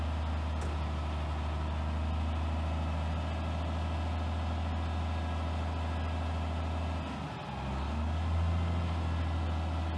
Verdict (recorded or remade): recorded